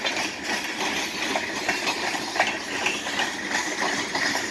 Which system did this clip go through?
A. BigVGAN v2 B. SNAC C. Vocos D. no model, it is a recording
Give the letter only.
D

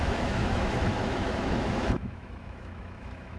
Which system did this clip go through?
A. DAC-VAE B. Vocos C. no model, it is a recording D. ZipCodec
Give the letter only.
A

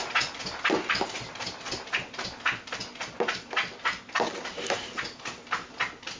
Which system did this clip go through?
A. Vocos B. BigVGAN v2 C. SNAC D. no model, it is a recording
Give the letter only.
D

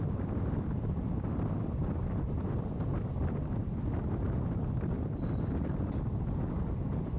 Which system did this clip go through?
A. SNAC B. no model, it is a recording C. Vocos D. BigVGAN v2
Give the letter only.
B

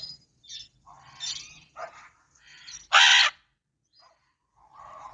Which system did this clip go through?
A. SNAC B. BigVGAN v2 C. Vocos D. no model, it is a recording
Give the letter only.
D